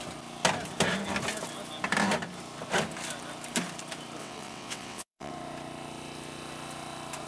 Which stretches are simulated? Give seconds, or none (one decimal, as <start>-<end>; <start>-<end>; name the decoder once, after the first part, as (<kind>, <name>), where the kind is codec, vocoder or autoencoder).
4.2-5.3 (vocoder, WaveNeXt)